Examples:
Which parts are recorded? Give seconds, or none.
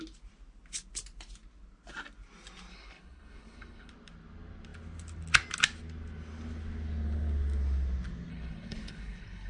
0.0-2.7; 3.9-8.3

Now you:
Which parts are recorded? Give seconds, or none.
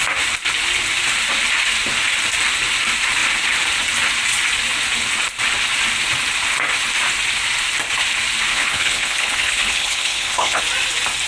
0.0-8.5; 10.6-11.3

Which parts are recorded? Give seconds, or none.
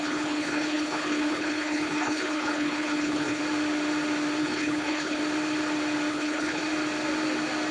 3.4-4.4; 5.2-6.1; 6.6-7.7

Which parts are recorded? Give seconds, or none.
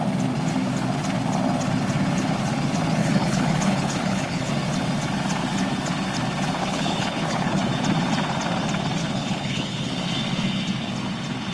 0.0-3.0; 4.5-6.6; 7.6-9.0; 9.9-11.5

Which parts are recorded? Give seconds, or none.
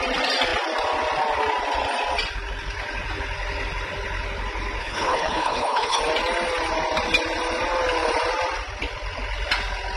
0.0-4.8; 6.0-10.0